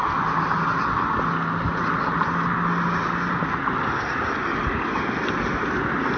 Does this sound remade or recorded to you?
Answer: recorded